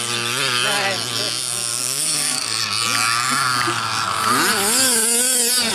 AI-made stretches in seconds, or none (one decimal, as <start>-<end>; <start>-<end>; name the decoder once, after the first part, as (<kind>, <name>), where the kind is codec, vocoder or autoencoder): 1.7-2.6 (codec, DAC)